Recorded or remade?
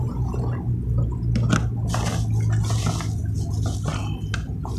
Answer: recorded